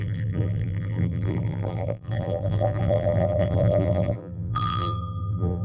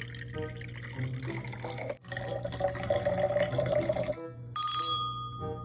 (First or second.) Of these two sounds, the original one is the second